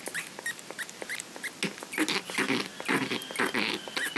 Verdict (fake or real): real